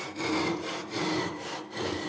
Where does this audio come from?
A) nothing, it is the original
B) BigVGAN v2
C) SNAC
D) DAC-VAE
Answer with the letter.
A